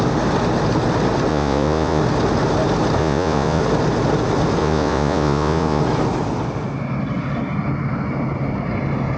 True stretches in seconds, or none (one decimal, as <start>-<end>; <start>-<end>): 0.0-1.3; 2.0-3.0; 3.6-4.6; 5.8-9.2